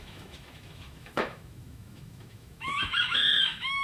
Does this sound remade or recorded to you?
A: remade